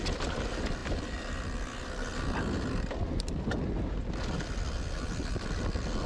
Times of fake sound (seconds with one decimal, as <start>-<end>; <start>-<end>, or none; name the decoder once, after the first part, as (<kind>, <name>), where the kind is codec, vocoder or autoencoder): none